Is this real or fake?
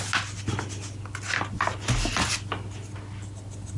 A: real